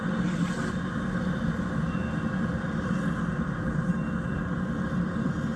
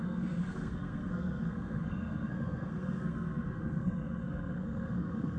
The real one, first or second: first